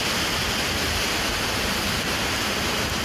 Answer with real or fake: real